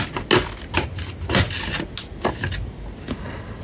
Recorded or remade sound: recorded